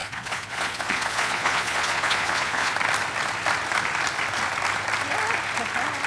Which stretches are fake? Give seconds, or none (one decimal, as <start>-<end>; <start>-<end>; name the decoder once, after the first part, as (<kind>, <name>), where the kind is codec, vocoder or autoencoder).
0.0-2.7 (vocoder, Vocos)

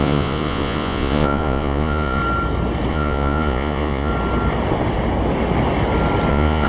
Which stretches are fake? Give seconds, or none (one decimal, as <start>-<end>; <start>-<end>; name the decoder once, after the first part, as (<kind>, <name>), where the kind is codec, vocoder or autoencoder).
0.0-2.2 (vocoder, Vocos); 2.9-4.1; 6.3-6.7

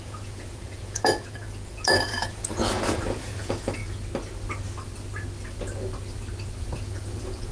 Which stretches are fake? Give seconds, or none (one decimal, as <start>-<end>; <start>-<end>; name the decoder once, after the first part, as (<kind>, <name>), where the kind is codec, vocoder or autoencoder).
0.0-3.8 (vocoder, Vocos); 6.6-7.5

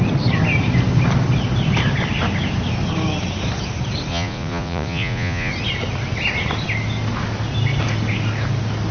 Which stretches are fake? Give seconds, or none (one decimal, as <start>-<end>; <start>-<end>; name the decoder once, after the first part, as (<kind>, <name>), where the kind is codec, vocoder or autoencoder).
4.1-5.5 (vocoder, Vocos)

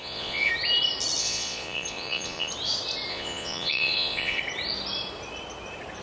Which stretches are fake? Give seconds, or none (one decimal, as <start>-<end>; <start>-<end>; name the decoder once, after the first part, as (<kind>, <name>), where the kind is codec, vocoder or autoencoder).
0.0-0.5 (vocoder, Vocos); 1.2-2.5; 3.1-4.4

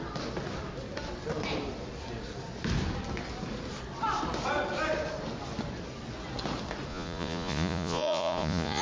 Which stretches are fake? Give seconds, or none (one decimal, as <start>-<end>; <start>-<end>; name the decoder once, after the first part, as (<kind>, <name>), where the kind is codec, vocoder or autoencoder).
6.9-8.8 (vocoder, Vocos)